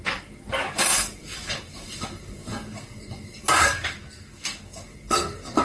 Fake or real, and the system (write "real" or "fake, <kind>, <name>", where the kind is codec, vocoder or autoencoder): fake, codec, DAC